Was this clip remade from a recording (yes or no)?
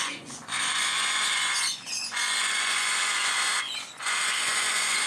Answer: yes